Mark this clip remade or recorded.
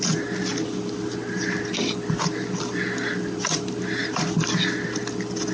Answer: recorded